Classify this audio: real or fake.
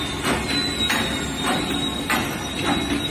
real